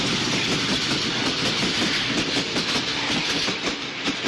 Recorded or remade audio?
recorded